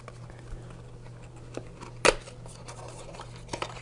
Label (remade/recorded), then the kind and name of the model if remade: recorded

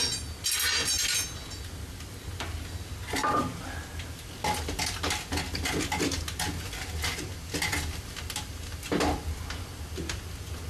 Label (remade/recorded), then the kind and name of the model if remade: recorded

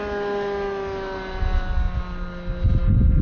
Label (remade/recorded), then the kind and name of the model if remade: recorded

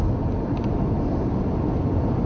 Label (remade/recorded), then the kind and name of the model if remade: recorded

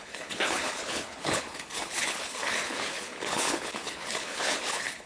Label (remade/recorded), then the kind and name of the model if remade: remade, codec, HILCodec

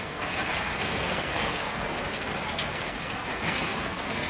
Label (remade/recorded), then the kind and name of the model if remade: remade, codec, SNAC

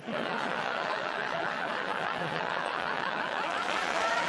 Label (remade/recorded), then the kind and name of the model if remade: remade, vocoder, Vocos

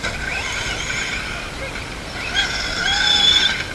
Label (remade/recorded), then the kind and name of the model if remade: recorded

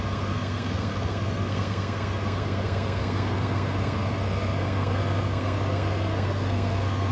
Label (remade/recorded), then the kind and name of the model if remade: remade, codec, SNAC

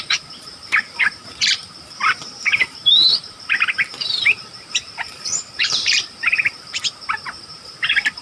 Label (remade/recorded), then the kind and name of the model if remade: remade, vocoder, BigVGAN v2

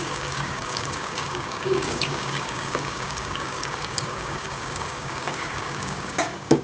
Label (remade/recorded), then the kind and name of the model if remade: remade, codec, DAC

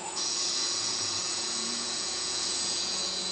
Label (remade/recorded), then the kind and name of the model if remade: remade, vocoder, Vocos